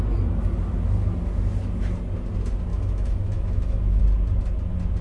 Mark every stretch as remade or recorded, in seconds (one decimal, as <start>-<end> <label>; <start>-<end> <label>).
0.0-2.7 recorded; 2.7-4.0 remade; 4.0-5.0 recorded